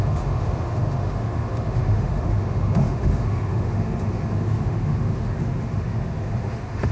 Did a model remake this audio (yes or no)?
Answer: yes